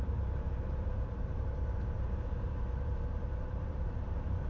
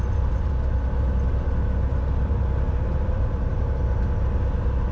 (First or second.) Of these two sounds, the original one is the second